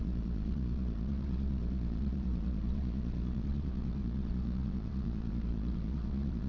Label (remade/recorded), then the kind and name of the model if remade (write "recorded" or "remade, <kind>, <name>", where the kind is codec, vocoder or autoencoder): remade, vocoder, Vocos